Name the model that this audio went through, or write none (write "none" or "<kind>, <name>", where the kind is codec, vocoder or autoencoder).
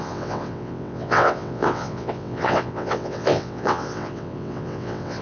vocoder, WaveNeXt